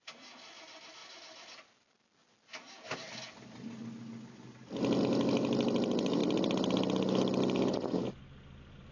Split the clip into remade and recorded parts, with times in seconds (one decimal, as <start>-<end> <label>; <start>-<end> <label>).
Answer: 0.0-8.9 recorded